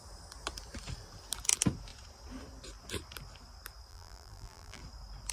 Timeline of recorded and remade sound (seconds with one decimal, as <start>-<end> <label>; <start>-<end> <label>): 0.0-3.9 recorded; 3.9-4.8 remade; 4.8-5.3 recorded